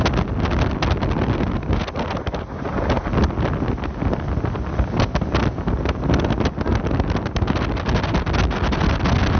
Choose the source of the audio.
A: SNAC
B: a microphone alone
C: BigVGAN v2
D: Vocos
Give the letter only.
B